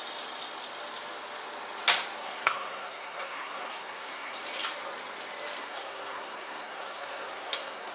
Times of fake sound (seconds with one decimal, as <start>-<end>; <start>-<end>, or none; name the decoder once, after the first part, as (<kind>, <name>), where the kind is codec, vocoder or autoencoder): 2.2-4.4 (codec, SNAC); 5.6-7.9